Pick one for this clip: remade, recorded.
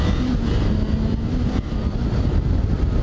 recorded